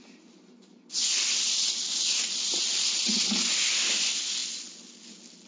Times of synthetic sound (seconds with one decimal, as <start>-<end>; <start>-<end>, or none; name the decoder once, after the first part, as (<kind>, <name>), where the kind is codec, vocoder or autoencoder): none